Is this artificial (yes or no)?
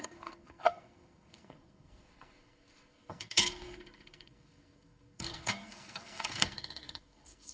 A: yes